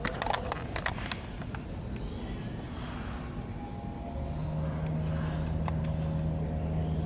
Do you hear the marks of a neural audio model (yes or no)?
no